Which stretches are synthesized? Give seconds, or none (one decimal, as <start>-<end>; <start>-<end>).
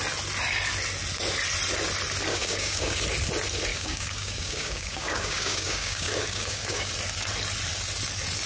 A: 2.3-3.0; 3.7-6.9